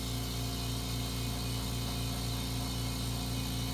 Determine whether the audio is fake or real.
real